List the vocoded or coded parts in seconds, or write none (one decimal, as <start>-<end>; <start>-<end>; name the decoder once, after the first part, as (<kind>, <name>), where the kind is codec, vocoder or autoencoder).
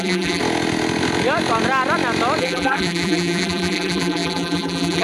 0.0-0.4 (vocoder, BigVGAN v2); 2.4-5.0